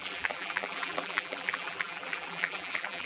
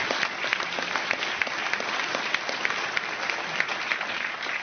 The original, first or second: second